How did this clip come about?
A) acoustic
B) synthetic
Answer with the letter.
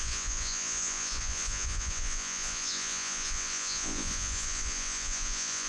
B